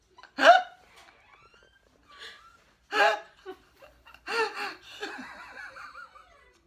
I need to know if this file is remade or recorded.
recorded